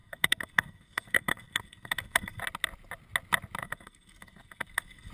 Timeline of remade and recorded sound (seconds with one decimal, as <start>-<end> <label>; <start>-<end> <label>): 0.0-2.4 remade; 2.4-3.6 recorded; 3.6-5.1 remade

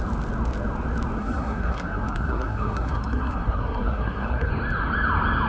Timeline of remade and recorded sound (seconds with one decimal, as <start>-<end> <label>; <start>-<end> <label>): 0.0-1.2 recorded; 1.2-4.5 remade; 4.5-5.5 recorded